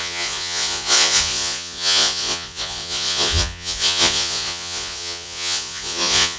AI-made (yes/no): yes